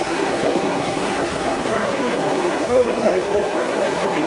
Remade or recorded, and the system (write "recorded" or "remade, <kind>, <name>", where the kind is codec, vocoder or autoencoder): remade, codec, SNAC